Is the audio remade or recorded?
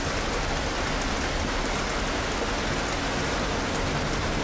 recorded